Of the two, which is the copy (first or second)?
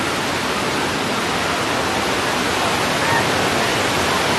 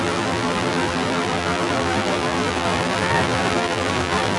second